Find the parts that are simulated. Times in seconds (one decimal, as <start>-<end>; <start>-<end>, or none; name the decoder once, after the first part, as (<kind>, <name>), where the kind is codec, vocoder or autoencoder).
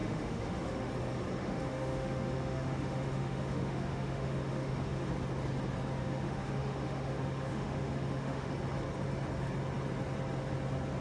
0.0-0.9 (autoencoder, DAC-VAE); 1.4-5.1; 6.0-8.5